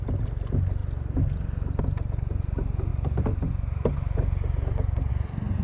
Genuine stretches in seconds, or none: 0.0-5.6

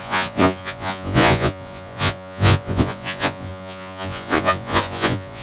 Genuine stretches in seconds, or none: none

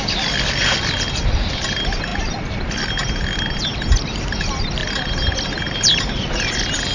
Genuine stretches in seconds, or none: 4.8-6.3

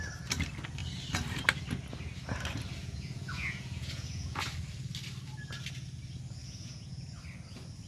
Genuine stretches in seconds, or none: 0.0-2.8; 4.5-6.4; 7.2-7.9

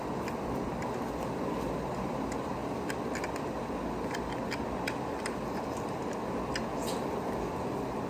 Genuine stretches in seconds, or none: 0.0-8.1

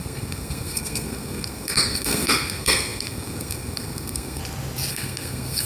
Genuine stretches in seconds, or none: 4.4-4.9